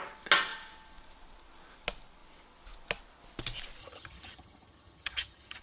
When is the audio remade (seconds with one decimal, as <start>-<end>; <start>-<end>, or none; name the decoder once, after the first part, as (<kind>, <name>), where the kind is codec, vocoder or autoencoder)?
3.8-5.6 (vocoder, HiFi-GAN)